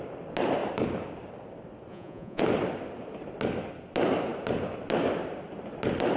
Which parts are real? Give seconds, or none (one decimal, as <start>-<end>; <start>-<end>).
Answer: 0.0-1.9; 2.4-6.2